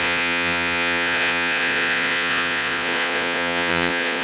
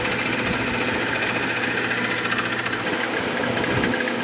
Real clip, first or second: second